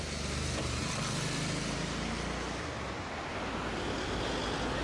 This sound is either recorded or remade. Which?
recorded